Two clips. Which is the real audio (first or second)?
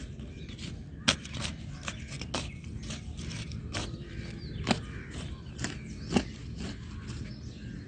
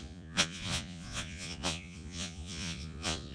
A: first